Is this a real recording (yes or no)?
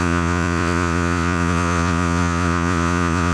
no